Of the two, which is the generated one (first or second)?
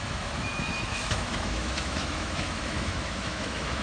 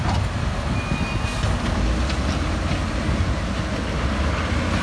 first